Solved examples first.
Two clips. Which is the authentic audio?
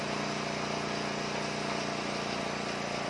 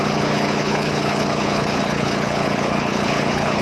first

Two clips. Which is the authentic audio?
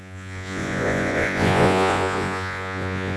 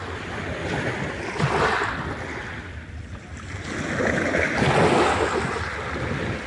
second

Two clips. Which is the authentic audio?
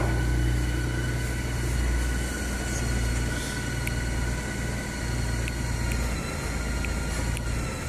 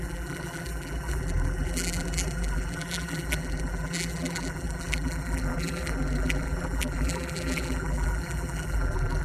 first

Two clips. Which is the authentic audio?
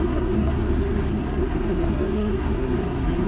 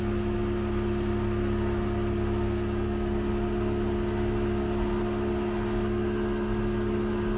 second